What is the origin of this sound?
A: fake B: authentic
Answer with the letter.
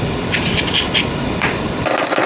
B